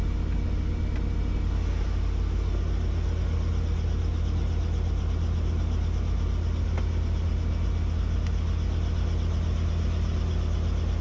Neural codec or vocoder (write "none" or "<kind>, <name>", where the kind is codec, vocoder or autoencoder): none